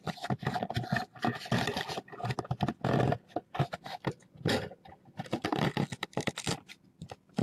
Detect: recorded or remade recorded